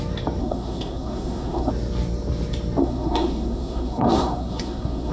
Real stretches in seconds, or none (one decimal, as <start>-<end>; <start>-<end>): 0.0-0.4; 1.7-2.8